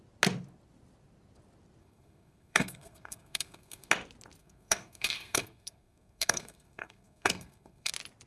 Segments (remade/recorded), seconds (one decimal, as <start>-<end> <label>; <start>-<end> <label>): 0.0-1.8 recorded; 1.8-3.9 remade; 3.9-4.4 recorded; 4.4-7.9 remade; 7.9-8.3 recorded